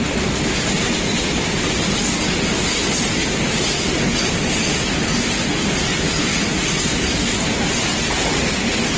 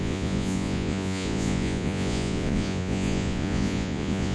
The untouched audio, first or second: first